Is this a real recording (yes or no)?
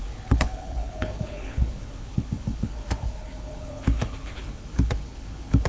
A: no